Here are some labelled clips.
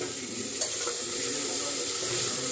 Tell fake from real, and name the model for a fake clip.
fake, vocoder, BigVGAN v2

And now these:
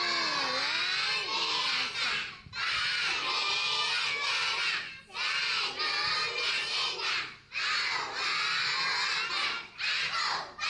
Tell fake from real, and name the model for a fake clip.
real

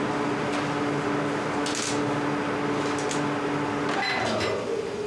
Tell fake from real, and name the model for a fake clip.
real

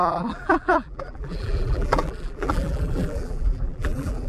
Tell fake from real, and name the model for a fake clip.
fake, vocoder, BigVGAN v2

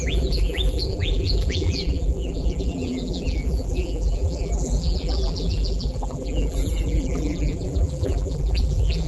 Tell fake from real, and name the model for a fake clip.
fake, vocoder, BigVGAN v2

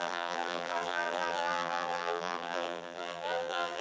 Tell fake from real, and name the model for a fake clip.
fake, vocoder, BigVGAN v2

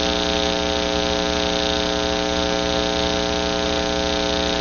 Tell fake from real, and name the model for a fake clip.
real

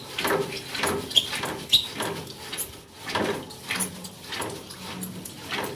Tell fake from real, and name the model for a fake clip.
real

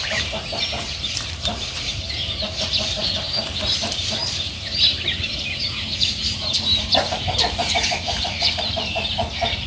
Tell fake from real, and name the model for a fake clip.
fake, vocoder, BigVGAN v2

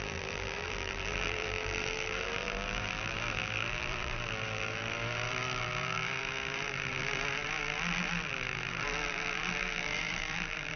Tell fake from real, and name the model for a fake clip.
fake, vocoder, BigVGAN v2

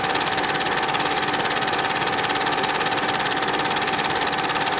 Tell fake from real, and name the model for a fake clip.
real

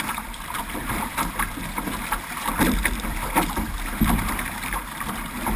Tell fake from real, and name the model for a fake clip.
fake, vocoder, BigVGAN v2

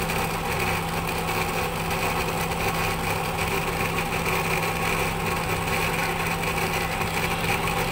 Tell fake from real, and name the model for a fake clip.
real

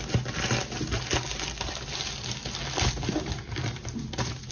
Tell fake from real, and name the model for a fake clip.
real